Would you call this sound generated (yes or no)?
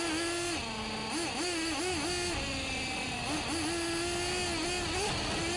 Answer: no